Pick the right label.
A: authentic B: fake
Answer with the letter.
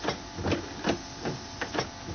A